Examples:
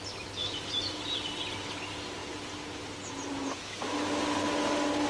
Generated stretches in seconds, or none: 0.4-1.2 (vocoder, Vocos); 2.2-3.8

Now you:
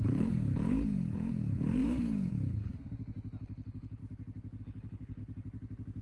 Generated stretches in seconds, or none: 0.0-2.7 (codec, HILCodec); 3.4-4.0; 4.6-5.2